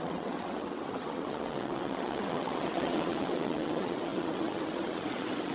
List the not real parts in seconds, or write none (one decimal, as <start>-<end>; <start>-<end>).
0.0-5.5

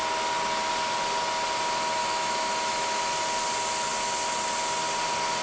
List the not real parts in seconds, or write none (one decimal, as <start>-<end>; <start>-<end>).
2.0-3.0

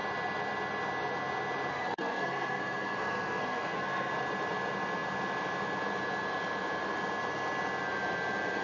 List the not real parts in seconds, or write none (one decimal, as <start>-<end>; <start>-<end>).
1.7-4.1

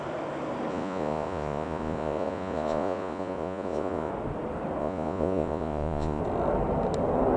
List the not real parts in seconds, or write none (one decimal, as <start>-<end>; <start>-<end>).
0.7-4.1; 4.8-6.2

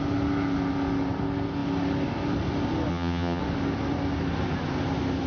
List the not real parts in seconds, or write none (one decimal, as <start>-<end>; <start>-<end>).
2.9-3.4